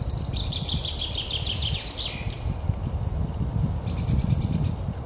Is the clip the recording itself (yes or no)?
yes